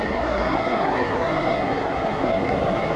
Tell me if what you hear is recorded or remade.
remade